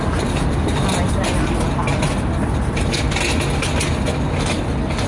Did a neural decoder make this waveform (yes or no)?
no